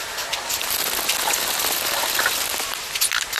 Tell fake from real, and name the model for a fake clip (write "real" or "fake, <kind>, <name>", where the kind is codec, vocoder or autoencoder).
real